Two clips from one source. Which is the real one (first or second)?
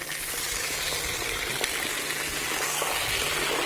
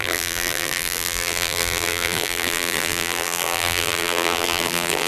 first